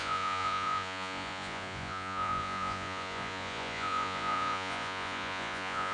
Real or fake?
fake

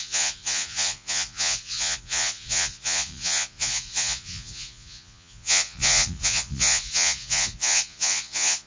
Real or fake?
fake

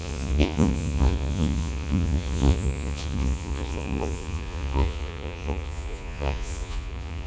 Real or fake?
fake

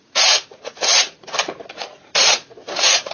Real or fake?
fake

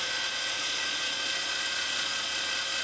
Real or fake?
fake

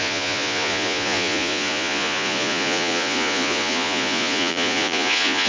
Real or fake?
fake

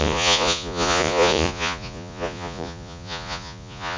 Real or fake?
fake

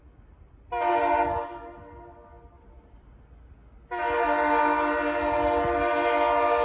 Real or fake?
real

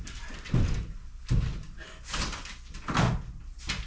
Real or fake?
real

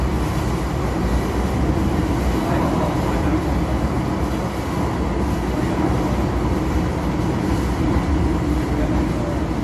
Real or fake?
real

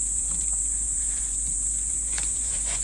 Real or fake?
fake